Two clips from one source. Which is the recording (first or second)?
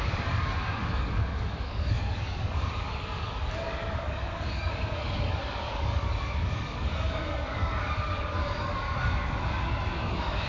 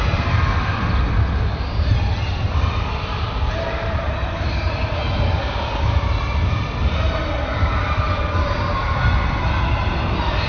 second